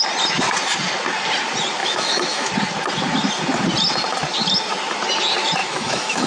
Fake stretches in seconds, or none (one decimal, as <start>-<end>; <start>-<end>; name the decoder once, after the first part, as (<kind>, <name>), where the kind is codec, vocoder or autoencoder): 1.8-2.5 (autoencoder, DAC-VAE); 5.6-6.3